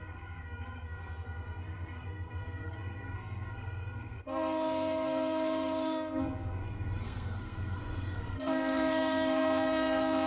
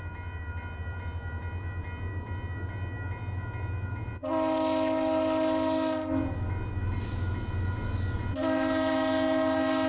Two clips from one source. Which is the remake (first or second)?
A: first